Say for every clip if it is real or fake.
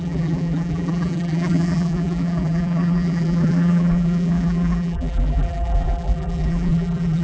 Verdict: fake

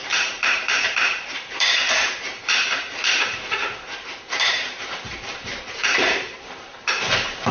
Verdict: fake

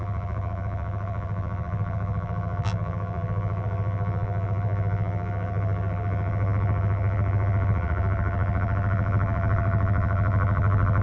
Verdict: fake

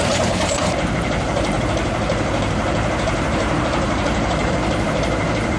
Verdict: fake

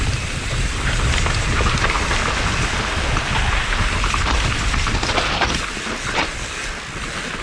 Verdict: real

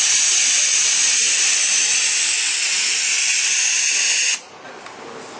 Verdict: real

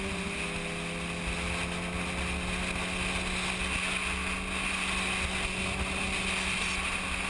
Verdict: real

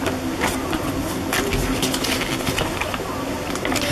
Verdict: real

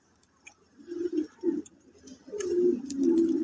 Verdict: fake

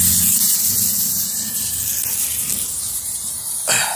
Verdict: real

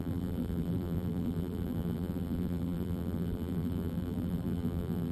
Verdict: fake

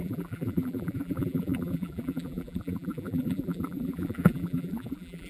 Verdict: fake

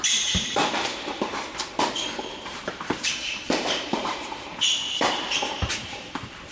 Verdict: fake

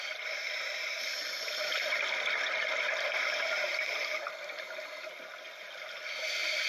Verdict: real